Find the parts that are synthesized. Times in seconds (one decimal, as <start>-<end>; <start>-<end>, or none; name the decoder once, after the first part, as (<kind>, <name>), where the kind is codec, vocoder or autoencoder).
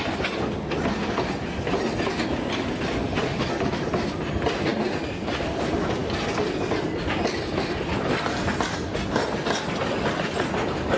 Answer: none